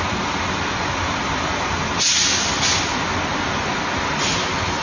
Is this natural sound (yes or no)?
yes